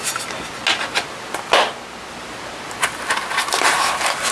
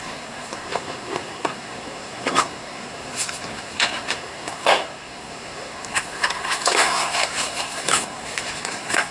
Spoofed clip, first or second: second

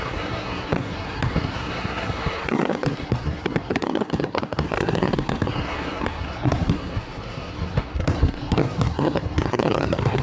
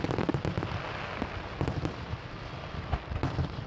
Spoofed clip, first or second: first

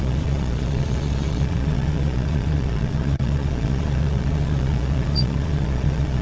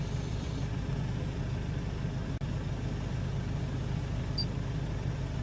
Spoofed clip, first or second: first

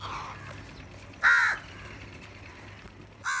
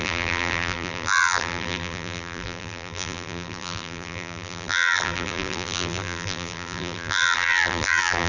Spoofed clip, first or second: second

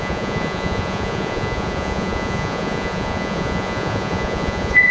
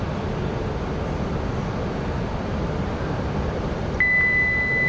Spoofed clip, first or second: first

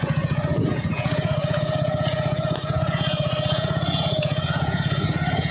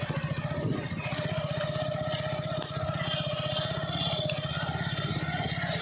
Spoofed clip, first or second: first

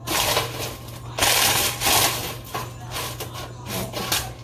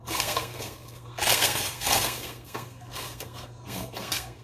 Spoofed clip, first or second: second